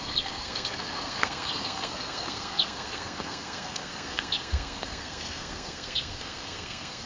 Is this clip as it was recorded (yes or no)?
no